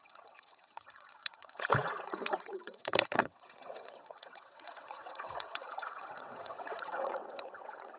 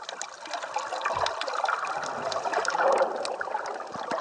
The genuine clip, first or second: second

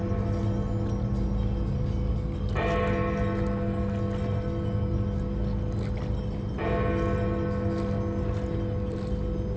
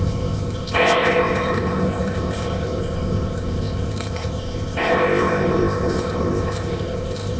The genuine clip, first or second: first